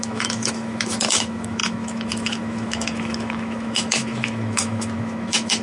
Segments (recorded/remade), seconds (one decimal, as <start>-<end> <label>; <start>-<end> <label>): 0.0-5.6 remade